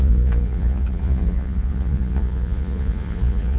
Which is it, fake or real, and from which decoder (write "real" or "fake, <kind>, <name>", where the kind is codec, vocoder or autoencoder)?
fake, vocoder, Vocos